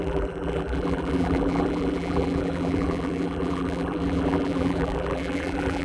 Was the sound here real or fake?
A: fake